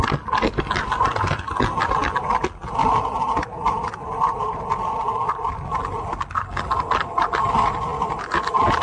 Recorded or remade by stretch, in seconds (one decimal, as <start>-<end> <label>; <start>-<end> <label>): 0.0-8.8 recorded